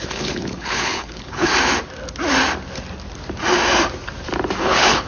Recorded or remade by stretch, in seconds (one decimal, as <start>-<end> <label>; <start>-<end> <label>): 0.0-1.5 remade; 1.5-4.6 recorded; 4.6-5.1 remade